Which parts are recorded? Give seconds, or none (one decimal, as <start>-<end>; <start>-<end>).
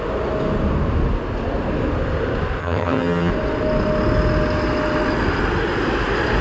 0.0-2.6; 3.3-6.4